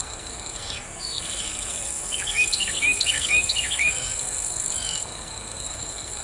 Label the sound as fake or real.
fake